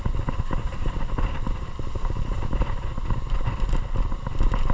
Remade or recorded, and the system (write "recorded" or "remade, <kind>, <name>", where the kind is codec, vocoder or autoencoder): recorded